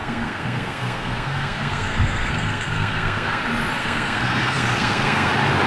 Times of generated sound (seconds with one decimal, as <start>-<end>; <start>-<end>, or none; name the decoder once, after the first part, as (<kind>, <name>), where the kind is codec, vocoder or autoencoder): 0.0-3.4 (codec, SNAC); 3.8-5.3